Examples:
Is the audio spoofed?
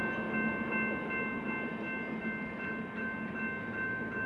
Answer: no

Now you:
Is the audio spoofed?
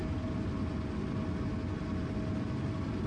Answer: no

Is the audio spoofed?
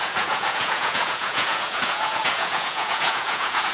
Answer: yes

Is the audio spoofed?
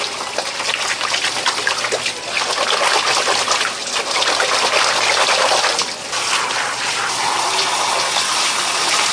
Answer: no